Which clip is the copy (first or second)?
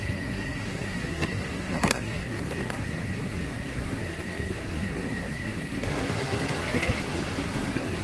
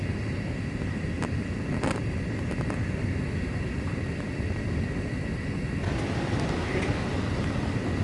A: first